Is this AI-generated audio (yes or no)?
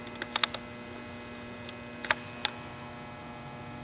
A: no